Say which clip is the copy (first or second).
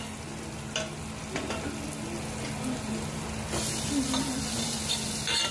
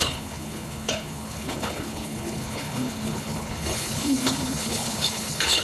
second